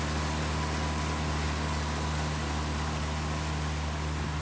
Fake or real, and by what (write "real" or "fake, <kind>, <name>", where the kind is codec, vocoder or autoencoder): real